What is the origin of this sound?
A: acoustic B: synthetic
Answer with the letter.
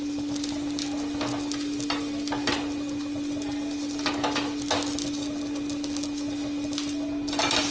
A